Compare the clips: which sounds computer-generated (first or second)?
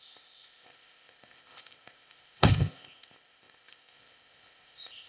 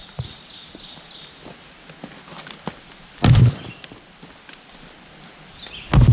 first